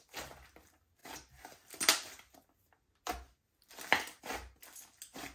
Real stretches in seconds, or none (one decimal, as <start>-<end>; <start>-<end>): 0.0-5.3